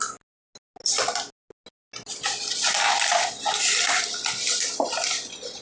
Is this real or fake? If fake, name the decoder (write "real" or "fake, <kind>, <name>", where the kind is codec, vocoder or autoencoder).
real